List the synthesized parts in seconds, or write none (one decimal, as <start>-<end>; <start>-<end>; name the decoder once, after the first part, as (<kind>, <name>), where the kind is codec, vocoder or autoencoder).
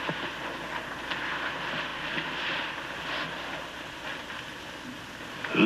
none